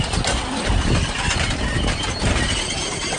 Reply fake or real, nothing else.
real